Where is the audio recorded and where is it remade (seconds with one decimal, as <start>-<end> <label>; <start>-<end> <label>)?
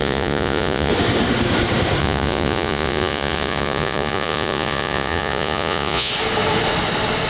0.0-0.9 remade; 0.9-2.0 recorded; 2.0-6.1 remade; 6.1-7.3 recorded